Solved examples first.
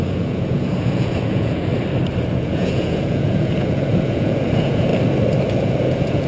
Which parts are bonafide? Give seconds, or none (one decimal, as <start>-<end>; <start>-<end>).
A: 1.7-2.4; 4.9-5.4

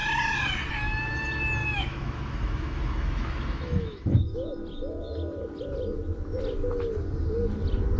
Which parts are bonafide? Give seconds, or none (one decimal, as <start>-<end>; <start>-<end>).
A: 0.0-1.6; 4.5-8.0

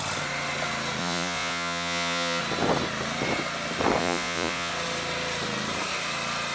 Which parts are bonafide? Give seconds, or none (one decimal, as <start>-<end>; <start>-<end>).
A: 0.0-1.0; 2.4-4.0; 4.7-6.5